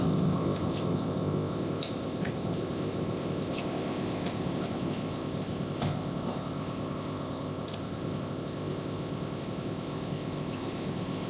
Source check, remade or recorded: remade